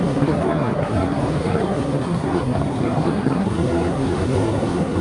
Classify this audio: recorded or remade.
remade